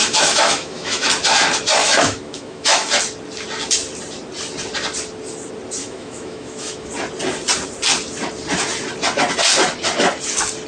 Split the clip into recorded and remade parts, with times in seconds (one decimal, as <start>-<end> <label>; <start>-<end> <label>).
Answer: 0.0-1.1 remade; 1.1-1.8 recorded; 1.8-2.9 remade; 2.9-5.8 recorded; 5.8-6.9 remade; 6.9-10.7 recorded